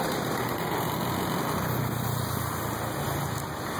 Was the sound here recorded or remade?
recorded